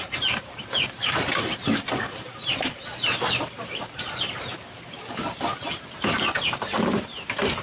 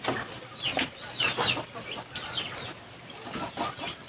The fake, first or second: first